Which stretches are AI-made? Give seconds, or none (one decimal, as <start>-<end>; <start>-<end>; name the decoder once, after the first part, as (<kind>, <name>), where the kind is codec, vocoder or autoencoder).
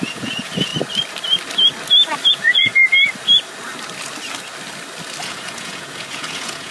0.0-0.7 (vocoder, Vocos); 2.3-2.7; 5.2-6.7